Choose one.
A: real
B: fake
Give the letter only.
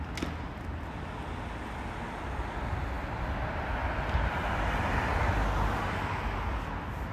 A